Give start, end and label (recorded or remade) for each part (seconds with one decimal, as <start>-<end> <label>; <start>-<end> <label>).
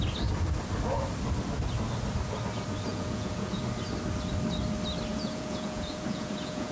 0.0-2.9 recorded; 2.9-3.6 remade; 3.6-5.1 recorded; 5.1-6.7 remade